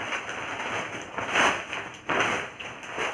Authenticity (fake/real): real